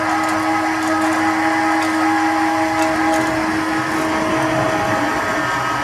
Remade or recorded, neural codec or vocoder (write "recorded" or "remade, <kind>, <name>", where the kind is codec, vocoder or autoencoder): recorded